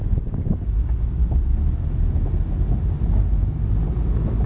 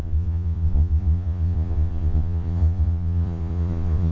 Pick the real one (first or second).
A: first